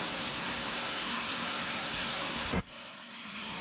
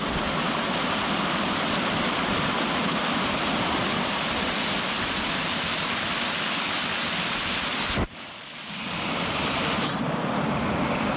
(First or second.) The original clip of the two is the second